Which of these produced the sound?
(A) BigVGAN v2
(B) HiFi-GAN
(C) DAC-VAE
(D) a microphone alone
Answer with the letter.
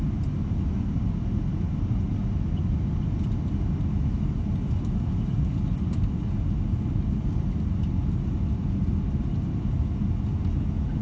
D